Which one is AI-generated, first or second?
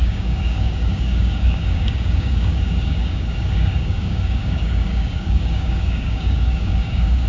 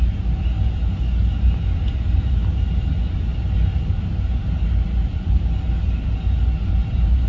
first